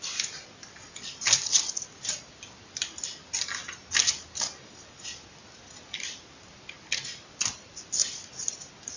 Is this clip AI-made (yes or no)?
no